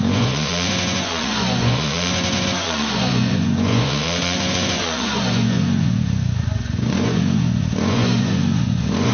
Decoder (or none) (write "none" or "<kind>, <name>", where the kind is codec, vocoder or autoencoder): vocoder, Vocos